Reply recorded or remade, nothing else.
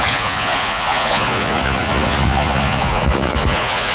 remade